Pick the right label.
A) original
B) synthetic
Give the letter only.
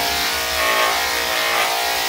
A